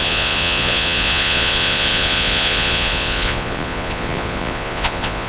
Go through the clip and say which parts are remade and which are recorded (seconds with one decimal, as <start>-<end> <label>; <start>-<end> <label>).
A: 0.0-5.3 remade